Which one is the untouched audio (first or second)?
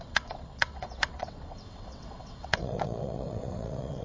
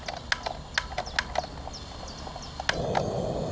second